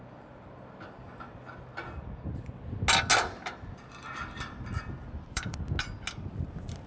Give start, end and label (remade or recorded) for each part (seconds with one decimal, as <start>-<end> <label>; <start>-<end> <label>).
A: 0.0-3.1 recorded; 3.1-5.6 remade; 5.6-6.9 recorded